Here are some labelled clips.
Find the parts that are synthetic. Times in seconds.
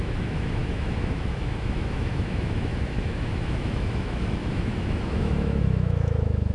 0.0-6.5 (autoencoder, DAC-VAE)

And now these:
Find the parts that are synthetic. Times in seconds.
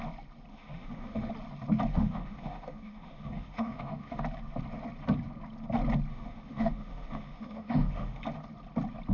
0.5-1.3 (autoencoder, DAC-VAE); 1.9-4.2; 6.1-8.2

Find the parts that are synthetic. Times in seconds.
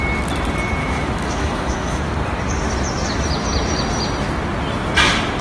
0.8-2.0 (autoencoder, DAC-VAE)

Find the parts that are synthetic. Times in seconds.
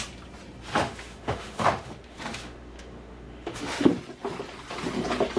0.7-3.9 (autoencoder, DAC-VAE)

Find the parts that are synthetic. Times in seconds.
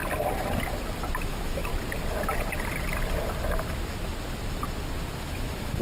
1.2-1.7 (autoencoder, DAC-VAE); 5.2-5.8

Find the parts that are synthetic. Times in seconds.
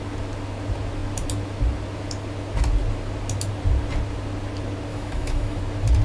4.9-5.6 (autoencoder, DAC-VAE)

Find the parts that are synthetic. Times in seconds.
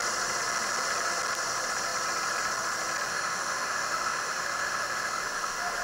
3.1-5.8 (autoencoder, DAC-VAE)